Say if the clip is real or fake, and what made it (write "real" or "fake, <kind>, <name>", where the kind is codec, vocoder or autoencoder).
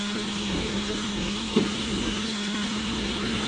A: fake, codec, SNAC